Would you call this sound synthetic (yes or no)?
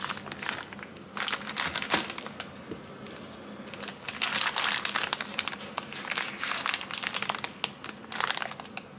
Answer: no